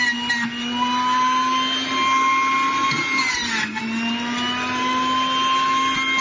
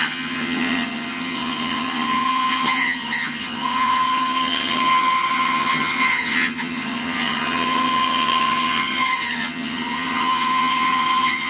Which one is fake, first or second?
second